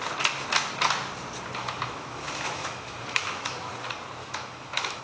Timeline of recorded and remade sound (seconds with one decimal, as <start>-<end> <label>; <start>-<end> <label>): 0.0-1.6 recorded; 1.6-3.7 remade; 3.7-4.2 recorded; 4.2-5.0 remade